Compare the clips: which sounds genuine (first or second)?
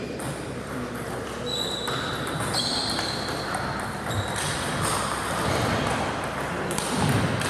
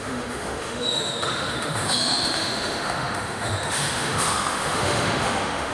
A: first